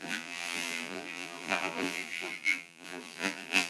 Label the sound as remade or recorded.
remade